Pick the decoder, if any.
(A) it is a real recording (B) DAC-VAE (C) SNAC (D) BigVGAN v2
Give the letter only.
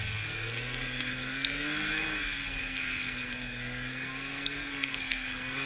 C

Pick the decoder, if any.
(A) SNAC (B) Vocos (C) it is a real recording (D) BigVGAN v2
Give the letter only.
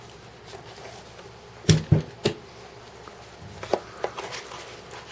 C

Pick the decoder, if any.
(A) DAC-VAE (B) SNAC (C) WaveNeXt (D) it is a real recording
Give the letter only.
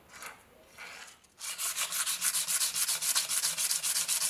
D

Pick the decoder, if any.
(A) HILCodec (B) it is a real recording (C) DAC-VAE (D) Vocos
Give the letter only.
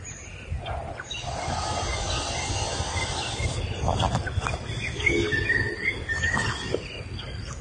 B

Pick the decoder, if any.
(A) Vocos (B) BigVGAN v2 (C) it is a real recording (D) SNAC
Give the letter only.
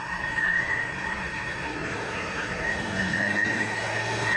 D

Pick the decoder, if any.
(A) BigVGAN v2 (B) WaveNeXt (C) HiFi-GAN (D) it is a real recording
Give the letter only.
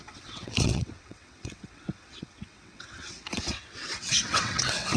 B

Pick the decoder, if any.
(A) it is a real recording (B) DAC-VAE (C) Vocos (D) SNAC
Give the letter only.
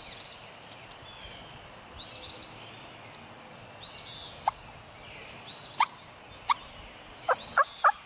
A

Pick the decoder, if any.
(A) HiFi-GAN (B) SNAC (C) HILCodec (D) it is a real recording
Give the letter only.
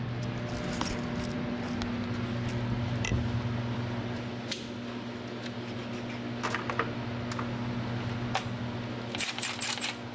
D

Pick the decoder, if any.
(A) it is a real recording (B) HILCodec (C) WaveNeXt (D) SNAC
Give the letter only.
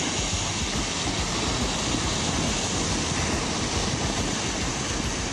A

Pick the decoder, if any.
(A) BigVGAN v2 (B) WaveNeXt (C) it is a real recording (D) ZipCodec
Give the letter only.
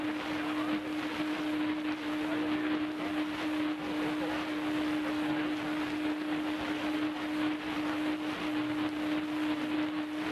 C